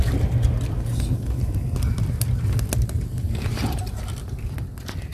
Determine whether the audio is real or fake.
real